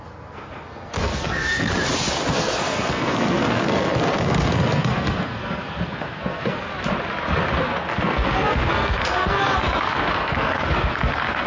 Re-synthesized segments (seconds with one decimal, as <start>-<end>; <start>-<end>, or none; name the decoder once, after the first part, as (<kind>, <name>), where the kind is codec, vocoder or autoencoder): 0.0-1.7 (codec, SNAC); 2.3-6.7; 7.6-11.5